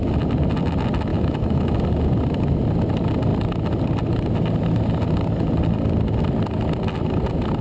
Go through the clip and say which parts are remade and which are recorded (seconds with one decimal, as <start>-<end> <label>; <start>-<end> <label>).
0.0-1.1 recorded; 1.1-1.8 remade; 1.8-7.6 recorded